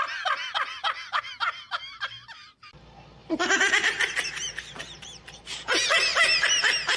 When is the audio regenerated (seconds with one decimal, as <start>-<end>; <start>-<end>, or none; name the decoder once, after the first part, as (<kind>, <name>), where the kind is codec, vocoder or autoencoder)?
3.2-5.4 (vocoder, BigVGAN v2)